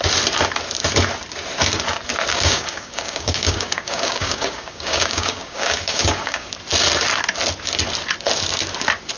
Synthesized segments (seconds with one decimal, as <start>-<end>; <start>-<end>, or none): 2.3-6.5